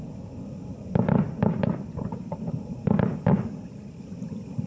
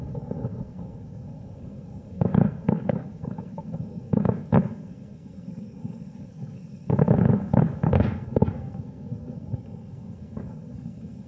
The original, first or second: first